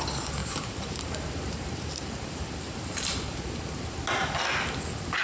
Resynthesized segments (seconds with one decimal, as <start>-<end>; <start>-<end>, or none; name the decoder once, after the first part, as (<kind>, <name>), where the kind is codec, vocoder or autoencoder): 0.4-3.5 (vocoder, BigVGAN v2)